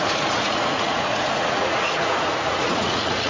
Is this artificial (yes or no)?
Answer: yes